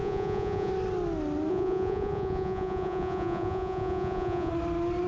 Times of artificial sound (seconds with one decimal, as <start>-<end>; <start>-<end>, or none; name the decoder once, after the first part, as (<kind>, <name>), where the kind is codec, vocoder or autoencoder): 0.0-0.7 (vocoder, Vocos); 1.5-4.5